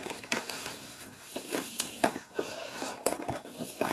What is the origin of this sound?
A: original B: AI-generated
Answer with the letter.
B